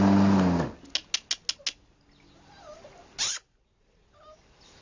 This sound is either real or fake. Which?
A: real